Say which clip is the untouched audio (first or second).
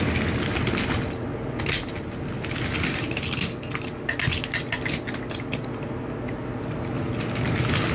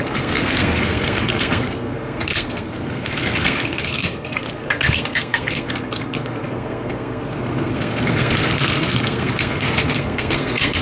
first